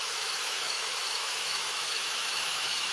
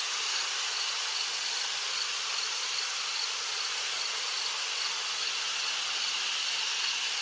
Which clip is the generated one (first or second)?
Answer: first